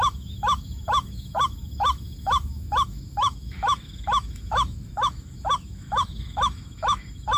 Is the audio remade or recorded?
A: remade